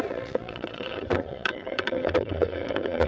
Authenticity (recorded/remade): remade